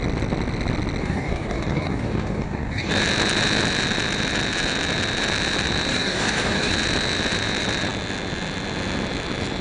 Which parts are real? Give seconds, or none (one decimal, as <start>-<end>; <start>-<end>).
0.0-1.0; 2.9-5.9; 6.7-9.6